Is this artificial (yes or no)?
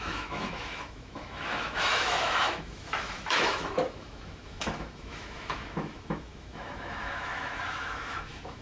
yes